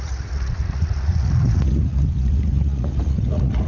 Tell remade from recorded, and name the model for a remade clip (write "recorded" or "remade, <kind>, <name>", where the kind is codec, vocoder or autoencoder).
remade, vocoder, Vocos